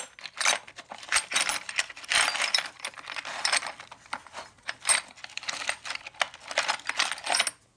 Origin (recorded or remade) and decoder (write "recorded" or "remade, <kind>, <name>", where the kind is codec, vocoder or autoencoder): recorded